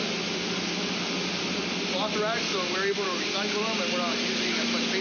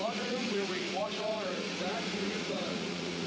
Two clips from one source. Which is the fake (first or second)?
second